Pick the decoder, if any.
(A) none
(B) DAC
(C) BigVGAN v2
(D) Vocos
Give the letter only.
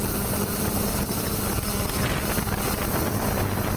A